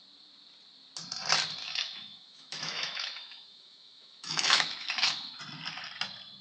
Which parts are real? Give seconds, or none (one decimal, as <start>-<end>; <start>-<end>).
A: 0.0-1.6; 5.4-6.4